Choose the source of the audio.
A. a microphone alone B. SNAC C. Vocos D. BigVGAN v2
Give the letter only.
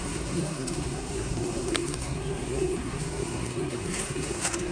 B